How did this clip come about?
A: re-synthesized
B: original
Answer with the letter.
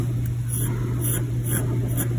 B